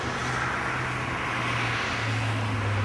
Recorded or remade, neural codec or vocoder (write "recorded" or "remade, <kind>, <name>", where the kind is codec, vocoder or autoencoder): recorded